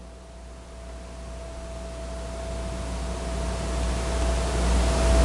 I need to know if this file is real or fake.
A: real